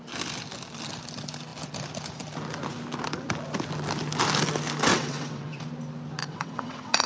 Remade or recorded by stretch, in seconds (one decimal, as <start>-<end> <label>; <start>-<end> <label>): 0.0-4.9 recorded; 4.9-5.6 remade; 5.6-6.2 recorded; 6.2-7.1 remade